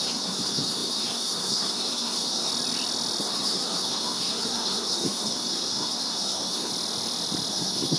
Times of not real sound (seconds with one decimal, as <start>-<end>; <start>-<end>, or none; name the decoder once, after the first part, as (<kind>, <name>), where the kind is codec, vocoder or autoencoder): 0.0-2.5 (codec, SNAC); 3.2-6.7; 7.5-8.0